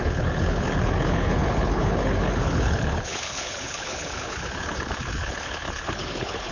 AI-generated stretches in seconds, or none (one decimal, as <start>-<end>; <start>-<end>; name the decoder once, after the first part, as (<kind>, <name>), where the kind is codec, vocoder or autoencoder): 0.0-6.5 (codec, HILCodec)

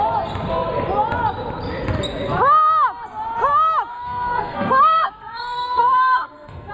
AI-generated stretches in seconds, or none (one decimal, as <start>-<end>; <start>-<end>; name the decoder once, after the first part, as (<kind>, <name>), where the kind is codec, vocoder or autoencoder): 3.9-6.7 (codec, SNAC)

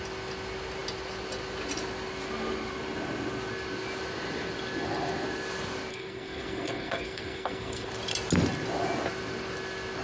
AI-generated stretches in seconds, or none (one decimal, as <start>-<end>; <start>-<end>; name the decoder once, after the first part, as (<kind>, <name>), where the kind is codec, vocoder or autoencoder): 5.9-7.9 (codec, SNAC)

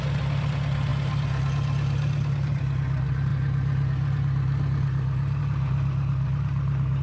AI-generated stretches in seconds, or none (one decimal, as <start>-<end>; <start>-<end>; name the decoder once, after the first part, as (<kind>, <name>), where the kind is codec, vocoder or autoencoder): none

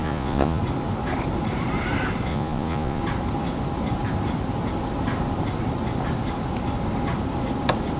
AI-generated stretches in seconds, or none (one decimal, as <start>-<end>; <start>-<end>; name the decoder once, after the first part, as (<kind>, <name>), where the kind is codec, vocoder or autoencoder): 0.0-0.6 (vocoder, Vocos); 2.3-3.0